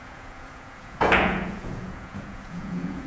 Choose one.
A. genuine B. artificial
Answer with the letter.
B